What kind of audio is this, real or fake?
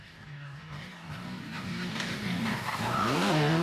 fake